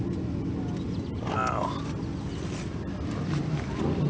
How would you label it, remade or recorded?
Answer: recorded